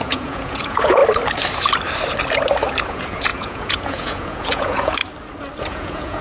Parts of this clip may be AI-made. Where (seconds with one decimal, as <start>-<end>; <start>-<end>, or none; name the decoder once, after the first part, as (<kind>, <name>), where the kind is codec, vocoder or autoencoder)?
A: 0.0-1.0 (vocoder, Vocos); 2.9-5.0; 5.6-6.2